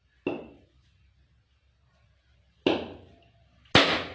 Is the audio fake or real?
real